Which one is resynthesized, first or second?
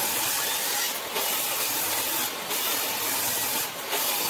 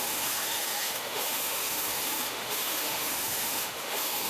second